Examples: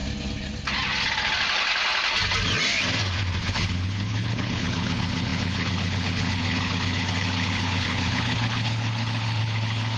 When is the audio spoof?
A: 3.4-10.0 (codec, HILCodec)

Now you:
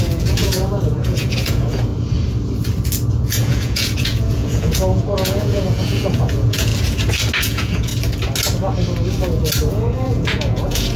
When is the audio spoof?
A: 0.0-1.9 (vocoder, Vocos); 3.1-6.7; 7.4-7.9; 9.7-11.0

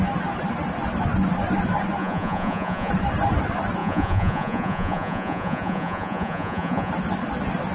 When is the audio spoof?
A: 2.0-2.9 (vocoder, Vocos); 3.8-6.9